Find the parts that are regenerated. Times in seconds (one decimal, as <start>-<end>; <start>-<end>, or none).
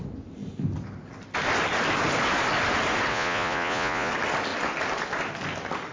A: 3.1-4.1